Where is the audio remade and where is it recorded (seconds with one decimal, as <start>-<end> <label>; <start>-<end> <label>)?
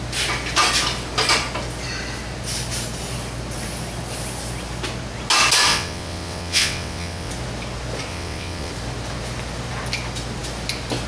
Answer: 0.0-5.7 recorded; 5.7-7.3 remade; 7.3-8.1 recorded; 8.1-8.7 remade; 8.7-11.1 recorded